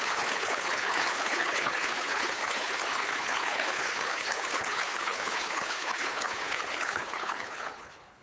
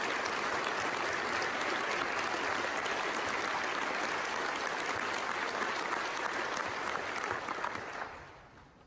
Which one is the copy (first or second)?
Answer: first